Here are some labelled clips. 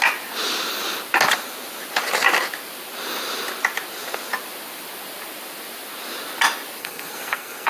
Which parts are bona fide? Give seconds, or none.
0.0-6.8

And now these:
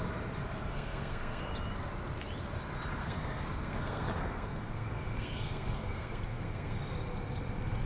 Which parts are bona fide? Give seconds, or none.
0.0-0.7; 1.5-3.0; 6.8-7.9